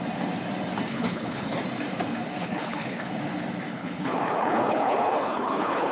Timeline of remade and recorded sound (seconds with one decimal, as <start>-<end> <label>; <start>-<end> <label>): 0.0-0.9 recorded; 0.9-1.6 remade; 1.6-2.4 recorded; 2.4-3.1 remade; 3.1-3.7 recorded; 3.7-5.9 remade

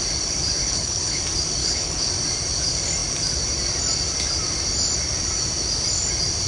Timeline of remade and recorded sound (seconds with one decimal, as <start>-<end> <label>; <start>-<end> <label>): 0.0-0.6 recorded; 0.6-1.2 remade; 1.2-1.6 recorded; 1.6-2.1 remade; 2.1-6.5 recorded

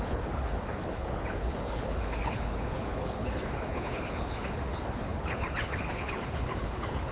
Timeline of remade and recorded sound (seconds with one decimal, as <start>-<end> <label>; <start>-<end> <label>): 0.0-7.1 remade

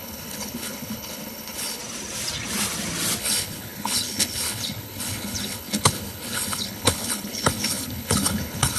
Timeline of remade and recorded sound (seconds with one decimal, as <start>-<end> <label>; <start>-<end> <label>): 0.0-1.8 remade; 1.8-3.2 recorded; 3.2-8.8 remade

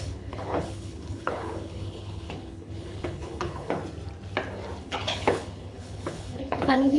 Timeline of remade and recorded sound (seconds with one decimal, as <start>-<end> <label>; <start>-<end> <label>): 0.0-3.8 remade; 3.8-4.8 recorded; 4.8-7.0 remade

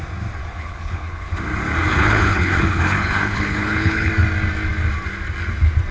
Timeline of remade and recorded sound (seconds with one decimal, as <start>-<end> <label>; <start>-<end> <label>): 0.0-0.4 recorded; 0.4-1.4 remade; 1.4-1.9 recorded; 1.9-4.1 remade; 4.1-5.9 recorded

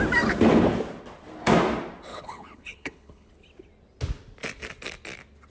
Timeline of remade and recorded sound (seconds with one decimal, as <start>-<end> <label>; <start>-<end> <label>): 0.0-2.1 recorded; 2.1-3.3 remade; 3.3-5.5 recorded